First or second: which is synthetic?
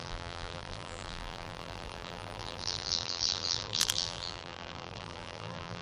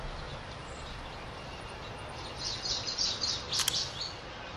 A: first